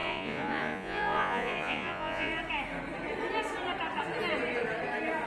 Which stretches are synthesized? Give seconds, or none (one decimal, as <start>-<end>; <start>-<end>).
0.0-2.3